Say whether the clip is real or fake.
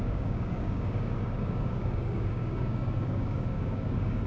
fake